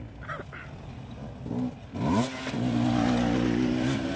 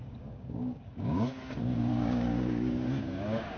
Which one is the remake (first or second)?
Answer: second